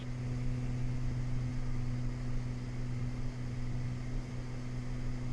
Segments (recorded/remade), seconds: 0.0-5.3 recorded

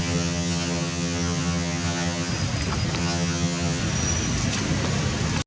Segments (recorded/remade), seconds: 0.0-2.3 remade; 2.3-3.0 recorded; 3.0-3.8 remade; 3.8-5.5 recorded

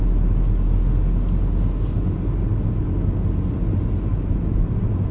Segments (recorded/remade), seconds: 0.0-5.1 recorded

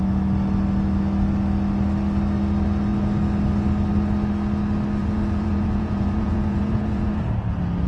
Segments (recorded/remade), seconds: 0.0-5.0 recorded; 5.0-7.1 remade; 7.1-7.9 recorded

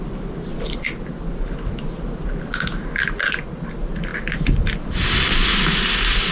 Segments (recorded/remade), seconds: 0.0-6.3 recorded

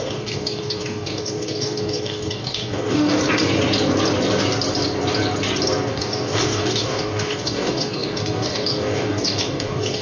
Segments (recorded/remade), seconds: 0.0-3.2 remade; 3.2-5.9 recorded; 5.9-10.0 remade